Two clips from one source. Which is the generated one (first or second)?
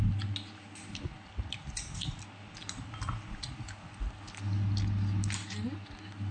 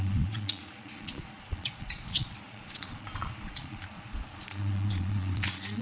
second